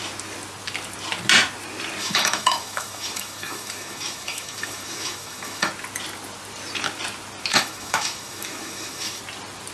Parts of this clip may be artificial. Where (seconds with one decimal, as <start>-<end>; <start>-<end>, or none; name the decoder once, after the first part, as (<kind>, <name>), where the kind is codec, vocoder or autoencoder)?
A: 2.0-5.7 (autoencoder, DAC-VAE); 7.5-9.2